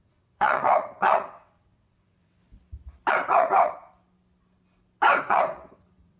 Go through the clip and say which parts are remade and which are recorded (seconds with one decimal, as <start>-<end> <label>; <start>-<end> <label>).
0.0-2.4 remade; 2.4-3.1 recorded; 3.1-3.8 remade; 3.8-5.2 recorded; 5.2-6.2 remade